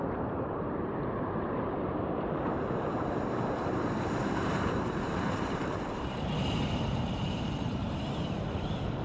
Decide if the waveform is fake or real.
fake